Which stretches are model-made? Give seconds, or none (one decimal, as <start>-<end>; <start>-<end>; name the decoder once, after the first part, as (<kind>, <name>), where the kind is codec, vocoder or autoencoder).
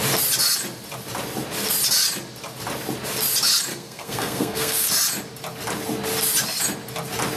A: 3.7-4.9 (codec, SNAC)